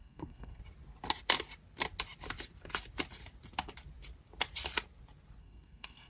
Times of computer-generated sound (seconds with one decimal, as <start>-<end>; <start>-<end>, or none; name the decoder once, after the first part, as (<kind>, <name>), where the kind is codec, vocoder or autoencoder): 0.0-0.6 (codec, SNAC); 5.4-6.1